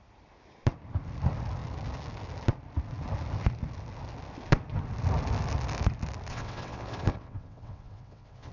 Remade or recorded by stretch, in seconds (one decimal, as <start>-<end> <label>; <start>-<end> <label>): 0.0-6.3 recorded; 6.3-8.5 remade